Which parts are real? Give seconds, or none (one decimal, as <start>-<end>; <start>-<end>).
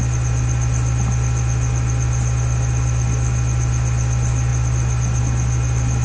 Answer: 0.0-6.0